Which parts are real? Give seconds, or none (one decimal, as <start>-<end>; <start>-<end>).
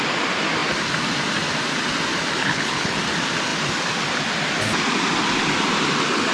0.0-2.4; 3.0-6.3